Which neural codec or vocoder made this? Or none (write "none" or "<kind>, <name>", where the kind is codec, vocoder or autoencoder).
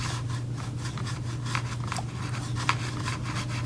none